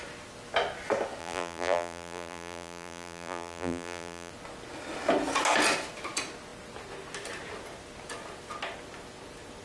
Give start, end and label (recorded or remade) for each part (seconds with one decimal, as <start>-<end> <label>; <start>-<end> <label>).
0.0-1.2 recorded; 1.2-4.3 remade; 4.3-9.6 recorded